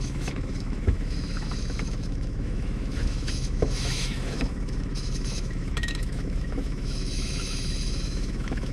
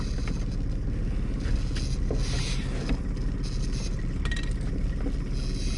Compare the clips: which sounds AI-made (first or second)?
first